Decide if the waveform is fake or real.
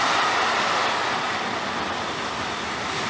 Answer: real